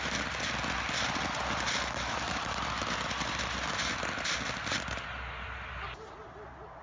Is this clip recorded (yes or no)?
yes